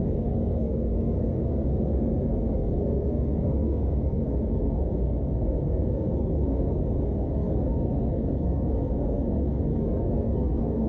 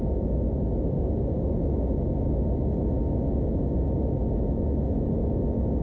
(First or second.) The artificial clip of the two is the first